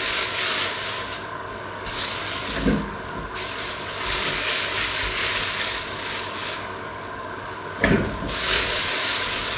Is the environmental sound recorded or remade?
remade